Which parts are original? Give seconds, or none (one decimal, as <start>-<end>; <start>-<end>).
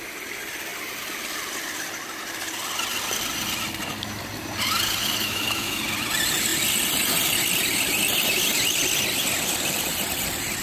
0.0-5.0; 5.8-10.6